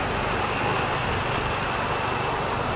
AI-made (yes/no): no